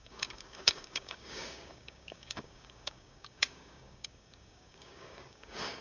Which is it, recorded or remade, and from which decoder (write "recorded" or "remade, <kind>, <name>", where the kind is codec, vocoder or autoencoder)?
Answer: remade, codec, DAC